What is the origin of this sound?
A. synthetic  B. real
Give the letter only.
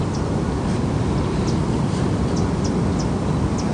B